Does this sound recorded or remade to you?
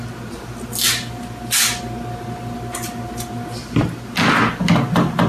recorded